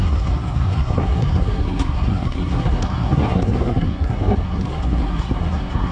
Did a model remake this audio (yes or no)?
yes